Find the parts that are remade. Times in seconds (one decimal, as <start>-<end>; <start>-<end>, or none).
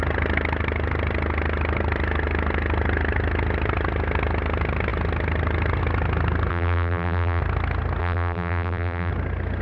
6.5-7.4; 8.0-9.1